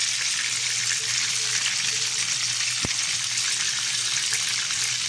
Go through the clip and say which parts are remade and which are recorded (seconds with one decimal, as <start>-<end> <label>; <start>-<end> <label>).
0.0-5.1 recorded